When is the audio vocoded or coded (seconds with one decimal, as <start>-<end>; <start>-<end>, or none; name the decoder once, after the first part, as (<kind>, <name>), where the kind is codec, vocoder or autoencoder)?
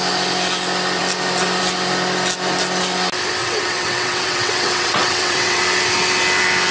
3.4-5.6 (vocoder, WaveNeXt)